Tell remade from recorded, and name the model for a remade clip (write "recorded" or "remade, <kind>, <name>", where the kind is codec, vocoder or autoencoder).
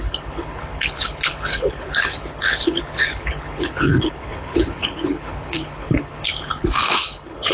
remade, codec, HILCodec